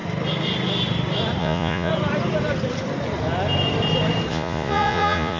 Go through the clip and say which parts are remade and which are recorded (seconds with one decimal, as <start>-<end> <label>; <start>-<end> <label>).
0.0-1.4 recorded; 1.4-1.9 remade; 1.9-4.3 recorded; 4.3-5.4 remade